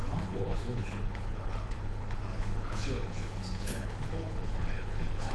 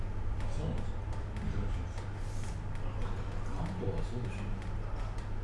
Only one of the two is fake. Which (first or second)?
first